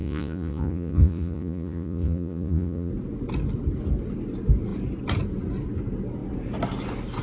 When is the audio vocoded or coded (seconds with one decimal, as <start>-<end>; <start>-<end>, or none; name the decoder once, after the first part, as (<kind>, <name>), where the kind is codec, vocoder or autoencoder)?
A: 0.0-2.9 (vocoder, Vocos)